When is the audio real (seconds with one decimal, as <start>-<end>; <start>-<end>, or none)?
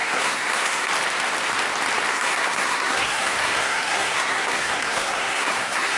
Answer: 0.9-2.1